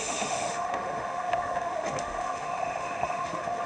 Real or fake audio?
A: fake